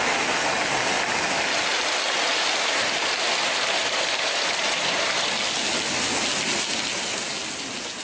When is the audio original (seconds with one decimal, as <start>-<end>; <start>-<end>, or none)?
0.0-1.7; 5.4-8.0